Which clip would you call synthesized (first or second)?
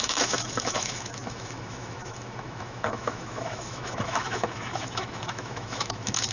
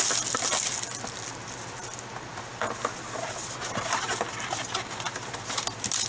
first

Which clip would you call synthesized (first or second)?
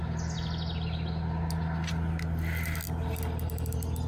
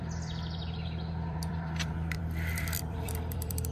second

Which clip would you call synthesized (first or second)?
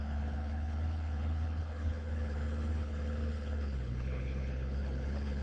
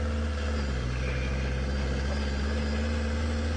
first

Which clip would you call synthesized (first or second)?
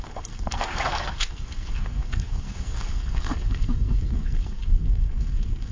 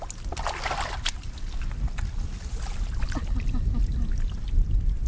first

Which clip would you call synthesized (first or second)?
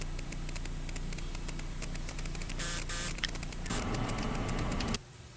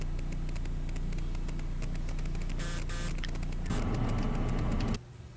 first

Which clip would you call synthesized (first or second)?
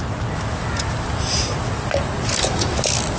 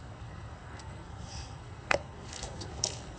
second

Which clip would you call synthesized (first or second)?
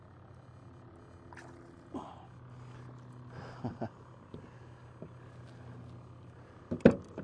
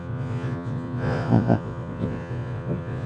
second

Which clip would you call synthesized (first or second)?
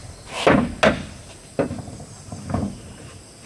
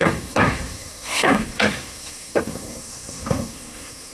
second